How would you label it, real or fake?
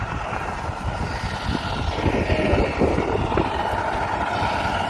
real